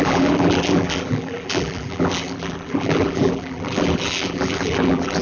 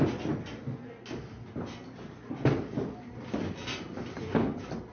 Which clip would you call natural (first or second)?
second